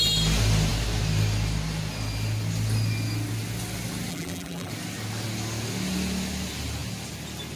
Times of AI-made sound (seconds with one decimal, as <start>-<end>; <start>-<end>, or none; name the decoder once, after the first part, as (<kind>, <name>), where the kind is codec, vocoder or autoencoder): 4.1-4.7 (vocoder, BigVGAN v2)